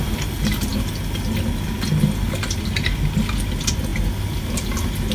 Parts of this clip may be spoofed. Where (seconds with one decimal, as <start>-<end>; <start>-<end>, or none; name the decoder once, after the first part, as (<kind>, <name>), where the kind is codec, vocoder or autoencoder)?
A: none